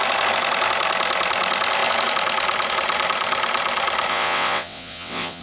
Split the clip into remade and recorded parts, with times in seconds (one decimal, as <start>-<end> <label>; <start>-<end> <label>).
0.0-4.1 recorded; 4.1-5.4 remade